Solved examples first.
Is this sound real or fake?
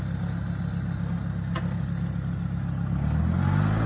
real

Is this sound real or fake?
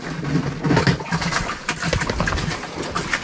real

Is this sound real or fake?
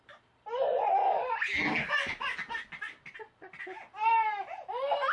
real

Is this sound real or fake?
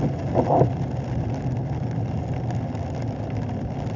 real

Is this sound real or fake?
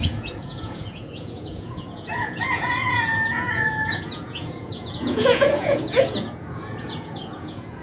fake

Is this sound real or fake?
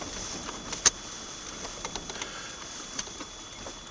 real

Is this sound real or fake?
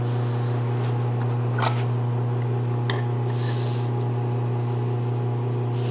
real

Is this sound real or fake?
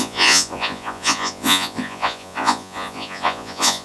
fake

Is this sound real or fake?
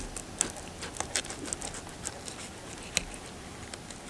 real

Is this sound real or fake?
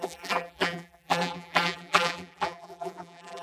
fake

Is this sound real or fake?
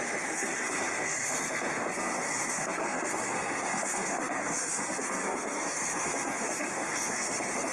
fake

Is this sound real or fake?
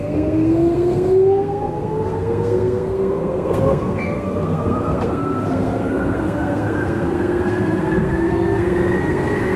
fake